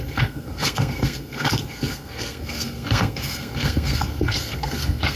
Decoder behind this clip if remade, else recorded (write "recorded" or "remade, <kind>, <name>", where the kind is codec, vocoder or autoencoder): remade, codec, SNAC